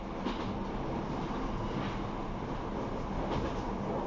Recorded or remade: recorded